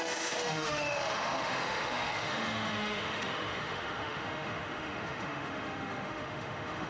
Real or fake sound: fake